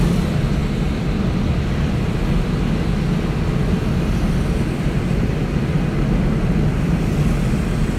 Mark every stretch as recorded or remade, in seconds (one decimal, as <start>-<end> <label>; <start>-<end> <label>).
0.0-8.0 recorded